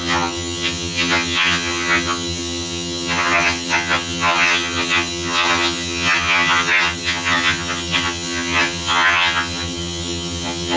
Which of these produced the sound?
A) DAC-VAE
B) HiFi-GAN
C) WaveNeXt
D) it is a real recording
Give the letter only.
B